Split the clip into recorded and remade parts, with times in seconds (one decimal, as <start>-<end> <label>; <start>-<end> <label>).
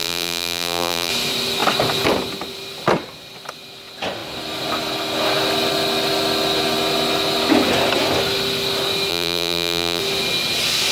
0.0-1.1 remade; 1.1-9.1 recorded; 9.1-10.0 remade; 10.0-10.9 recorded